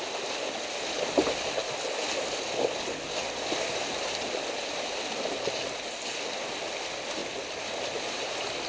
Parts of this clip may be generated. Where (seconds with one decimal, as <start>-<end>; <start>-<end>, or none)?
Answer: none